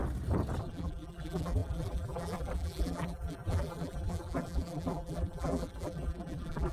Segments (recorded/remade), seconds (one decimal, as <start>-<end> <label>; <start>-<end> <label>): 0.0-0.6 recorded; 0.6-6.7 remade